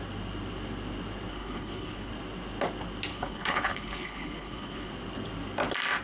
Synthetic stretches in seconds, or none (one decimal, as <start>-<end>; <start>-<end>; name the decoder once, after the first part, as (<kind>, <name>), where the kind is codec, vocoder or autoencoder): 1.3-2.1 (codec, HILCodec); 3.1-4.9